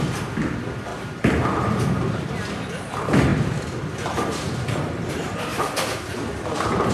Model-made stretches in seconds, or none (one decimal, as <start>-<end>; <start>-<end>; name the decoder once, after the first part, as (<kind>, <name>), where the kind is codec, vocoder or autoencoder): none